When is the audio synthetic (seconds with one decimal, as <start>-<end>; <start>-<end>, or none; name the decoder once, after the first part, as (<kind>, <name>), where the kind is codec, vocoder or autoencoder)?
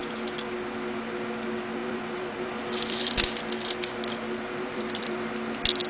0.0-0.7 (vocoder, BigVGAN v2); 1.8-5.3